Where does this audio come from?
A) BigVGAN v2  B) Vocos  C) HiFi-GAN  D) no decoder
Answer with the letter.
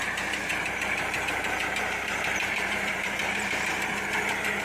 A